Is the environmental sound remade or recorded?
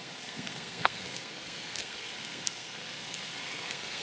remade